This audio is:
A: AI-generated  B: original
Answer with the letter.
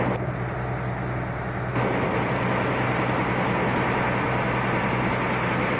B